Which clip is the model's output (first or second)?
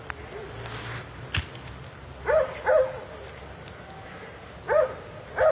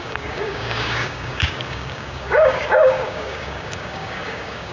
second